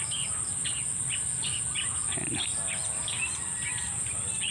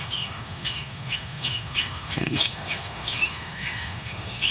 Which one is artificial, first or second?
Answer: second